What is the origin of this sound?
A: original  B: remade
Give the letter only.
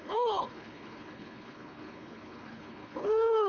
B